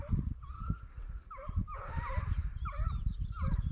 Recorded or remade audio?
recorded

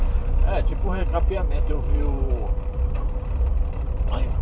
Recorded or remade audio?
remade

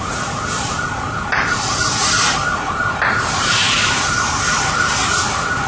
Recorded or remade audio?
remade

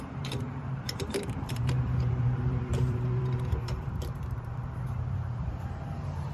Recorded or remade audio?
remade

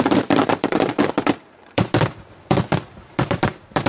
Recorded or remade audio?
remade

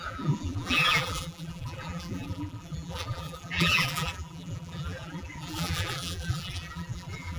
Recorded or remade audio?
remade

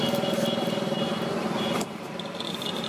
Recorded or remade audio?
recorded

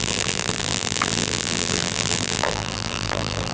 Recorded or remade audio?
remade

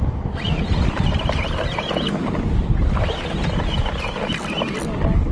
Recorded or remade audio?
recorded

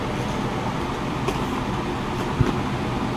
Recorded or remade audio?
recorded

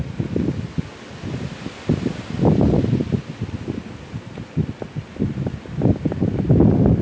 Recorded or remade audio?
recorded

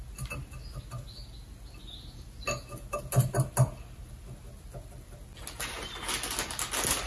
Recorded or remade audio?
recorded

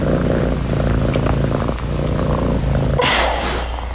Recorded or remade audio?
recorded